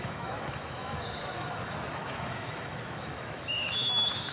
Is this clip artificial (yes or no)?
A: yes